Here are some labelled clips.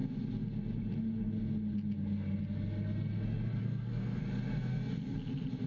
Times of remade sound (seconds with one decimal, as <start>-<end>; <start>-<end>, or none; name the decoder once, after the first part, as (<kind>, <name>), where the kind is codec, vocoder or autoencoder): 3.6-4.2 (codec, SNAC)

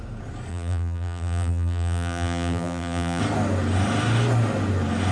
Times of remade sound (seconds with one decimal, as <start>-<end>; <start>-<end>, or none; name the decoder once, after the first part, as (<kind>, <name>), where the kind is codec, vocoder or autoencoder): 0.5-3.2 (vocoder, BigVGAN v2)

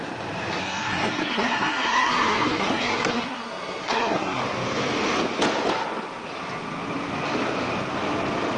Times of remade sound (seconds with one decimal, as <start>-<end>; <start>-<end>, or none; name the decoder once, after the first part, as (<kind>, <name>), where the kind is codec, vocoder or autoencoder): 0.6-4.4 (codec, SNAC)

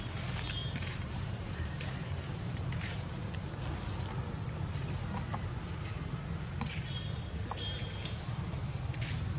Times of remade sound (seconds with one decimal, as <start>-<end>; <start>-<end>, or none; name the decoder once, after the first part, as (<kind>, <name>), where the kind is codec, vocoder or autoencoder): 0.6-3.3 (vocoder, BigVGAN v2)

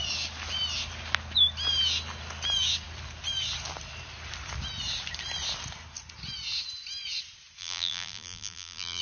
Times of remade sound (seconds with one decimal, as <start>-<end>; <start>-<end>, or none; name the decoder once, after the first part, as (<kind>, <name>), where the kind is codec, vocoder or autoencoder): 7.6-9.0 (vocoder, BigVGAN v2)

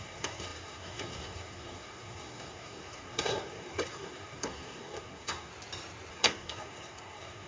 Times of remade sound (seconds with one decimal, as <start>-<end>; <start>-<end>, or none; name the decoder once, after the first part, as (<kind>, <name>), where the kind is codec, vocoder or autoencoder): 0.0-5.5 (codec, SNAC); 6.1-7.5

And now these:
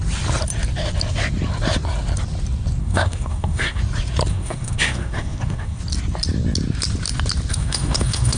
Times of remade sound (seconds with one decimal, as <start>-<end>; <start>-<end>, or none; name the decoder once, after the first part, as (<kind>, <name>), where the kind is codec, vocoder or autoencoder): 2.8-3.8 (codec, SNAC); 4.3-5.8; 7.5-8.4